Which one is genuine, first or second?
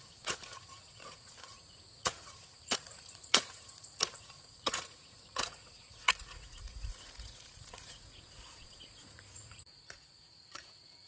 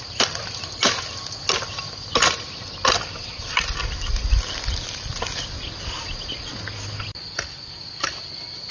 second